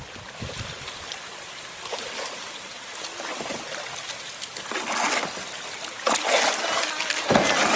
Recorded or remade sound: recorded